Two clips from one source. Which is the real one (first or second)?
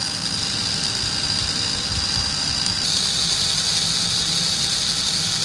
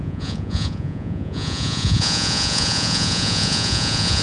first